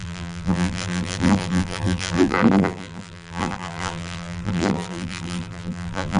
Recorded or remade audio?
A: remade